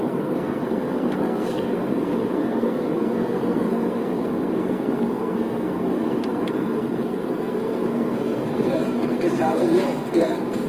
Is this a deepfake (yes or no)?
yes